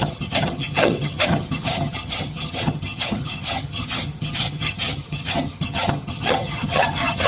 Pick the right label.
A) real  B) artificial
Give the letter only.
B